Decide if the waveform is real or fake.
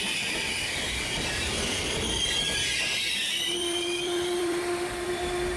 fake